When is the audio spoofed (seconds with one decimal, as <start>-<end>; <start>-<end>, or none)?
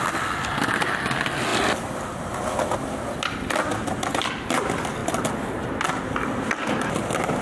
none